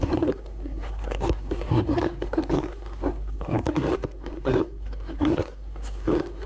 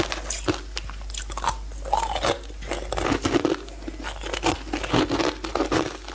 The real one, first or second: second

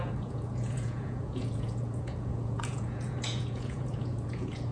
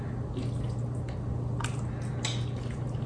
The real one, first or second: second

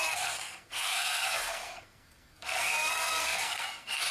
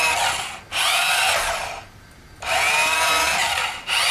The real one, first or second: second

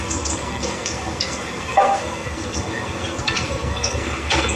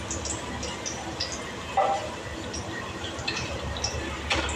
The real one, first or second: second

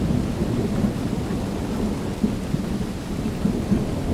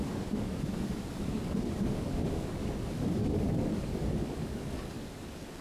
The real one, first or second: first